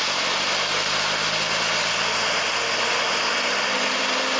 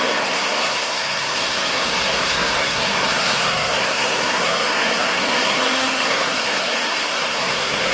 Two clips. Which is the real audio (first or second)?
first